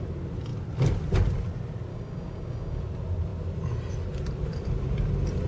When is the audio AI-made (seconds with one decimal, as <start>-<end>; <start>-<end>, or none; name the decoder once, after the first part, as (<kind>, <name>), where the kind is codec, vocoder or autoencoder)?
1.9-2.8 (codec, DAC)